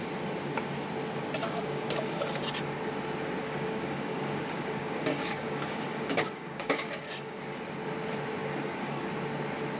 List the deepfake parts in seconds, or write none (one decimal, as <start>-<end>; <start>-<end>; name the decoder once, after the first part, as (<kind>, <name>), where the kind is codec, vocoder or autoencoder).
1.4-2.2 (codec, DAC); 3.4-7.4; 8.4-9.0